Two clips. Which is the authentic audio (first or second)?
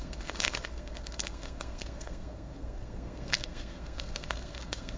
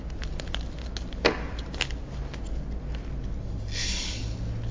second